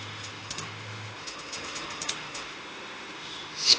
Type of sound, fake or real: fake